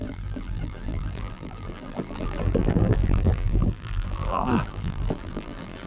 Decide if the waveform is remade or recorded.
remade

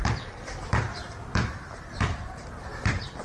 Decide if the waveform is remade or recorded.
remade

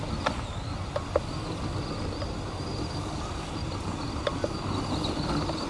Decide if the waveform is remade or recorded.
recorded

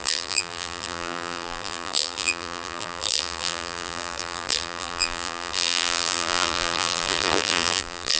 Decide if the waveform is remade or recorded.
remade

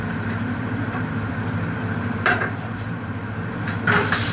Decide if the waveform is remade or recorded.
remade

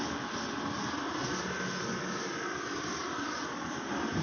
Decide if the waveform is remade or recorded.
recorded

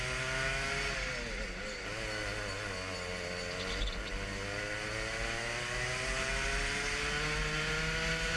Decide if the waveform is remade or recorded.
recorded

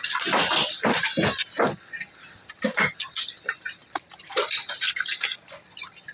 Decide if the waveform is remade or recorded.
remade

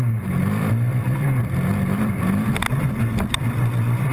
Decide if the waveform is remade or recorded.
remade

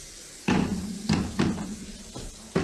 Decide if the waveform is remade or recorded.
recorded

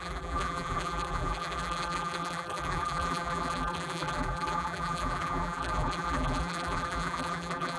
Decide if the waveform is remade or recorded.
remade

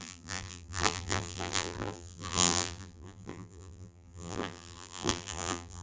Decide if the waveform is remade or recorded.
remade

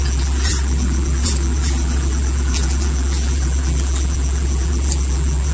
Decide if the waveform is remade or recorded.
remade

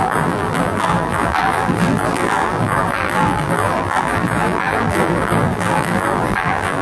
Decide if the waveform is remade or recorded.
remade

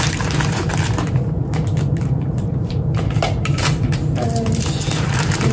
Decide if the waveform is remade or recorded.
remade